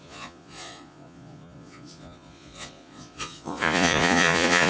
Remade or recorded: remade